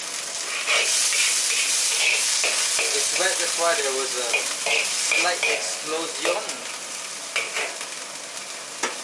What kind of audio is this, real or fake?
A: real